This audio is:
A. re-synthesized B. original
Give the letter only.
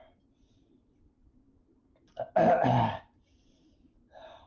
B